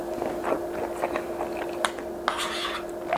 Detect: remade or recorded recorded